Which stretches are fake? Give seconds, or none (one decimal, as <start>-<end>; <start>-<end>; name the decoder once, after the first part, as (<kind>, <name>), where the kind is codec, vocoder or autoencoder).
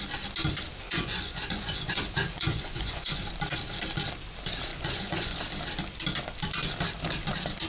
0.8-3.2 (vocoder, Vocos); 4.7-5.4